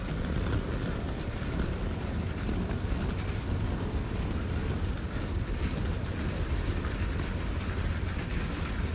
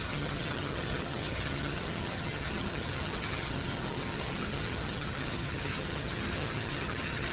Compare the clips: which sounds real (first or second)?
first